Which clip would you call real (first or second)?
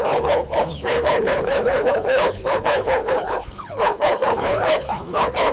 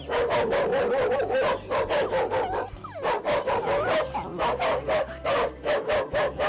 second